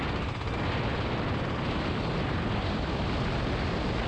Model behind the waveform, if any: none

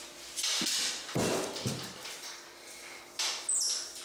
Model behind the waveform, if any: none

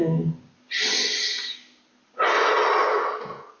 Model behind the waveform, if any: none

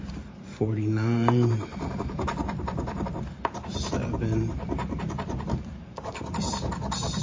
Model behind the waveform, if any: vocoder, BigVGAN v2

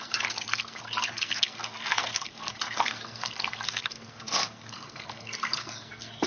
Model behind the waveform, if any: codec, SNAC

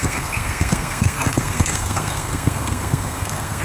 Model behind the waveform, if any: codec, SNAC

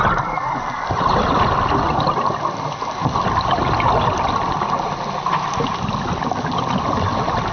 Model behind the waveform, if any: none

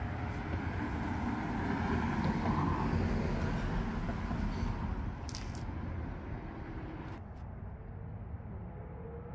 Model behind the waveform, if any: none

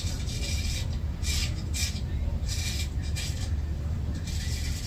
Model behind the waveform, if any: none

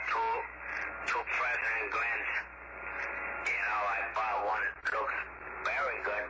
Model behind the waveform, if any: none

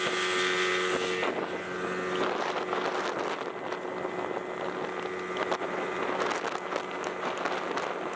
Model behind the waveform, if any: none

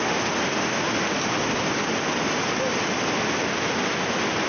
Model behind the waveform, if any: none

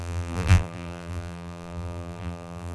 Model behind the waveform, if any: vocoder, BigVGAN v2